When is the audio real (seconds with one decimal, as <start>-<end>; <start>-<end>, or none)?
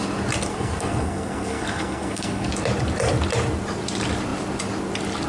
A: 0.0-0.5; 2.5-5.3